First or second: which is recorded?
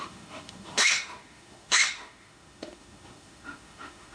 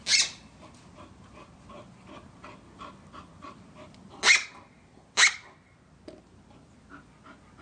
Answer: second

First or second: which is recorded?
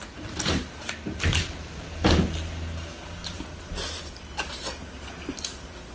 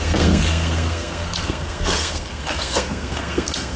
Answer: first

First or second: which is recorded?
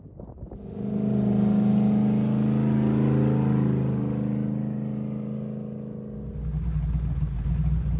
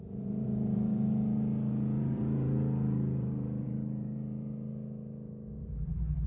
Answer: first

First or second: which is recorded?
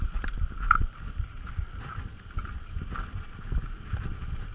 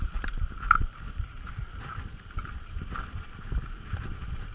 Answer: first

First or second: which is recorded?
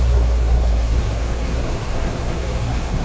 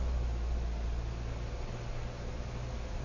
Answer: second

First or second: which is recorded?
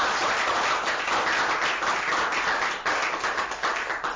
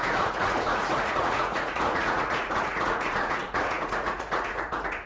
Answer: first